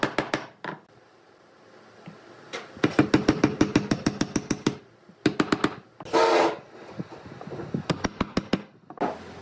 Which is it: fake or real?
real